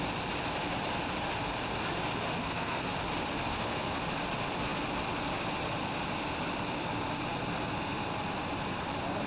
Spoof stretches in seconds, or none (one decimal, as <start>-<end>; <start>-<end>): 2.4-2.9; 3.5-4.1